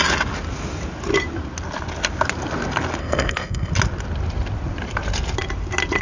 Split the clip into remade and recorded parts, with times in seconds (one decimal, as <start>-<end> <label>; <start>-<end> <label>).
0.0-3.0 recorded; 3.0-3.7 remade; 3.7-6.0 recorded